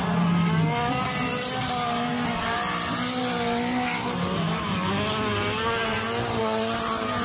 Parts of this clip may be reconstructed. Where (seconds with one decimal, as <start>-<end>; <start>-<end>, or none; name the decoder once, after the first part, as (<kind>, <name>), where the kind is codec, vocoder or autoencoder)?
none